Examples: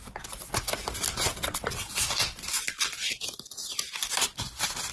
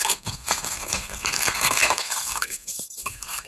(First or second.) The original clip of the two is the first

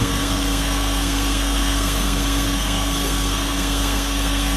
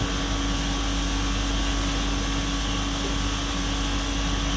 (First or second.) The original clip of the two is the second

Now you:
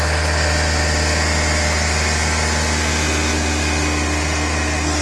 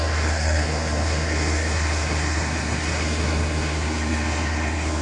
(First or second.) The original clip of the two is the first